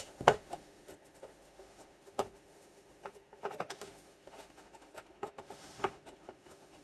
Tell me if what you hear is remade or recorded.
remade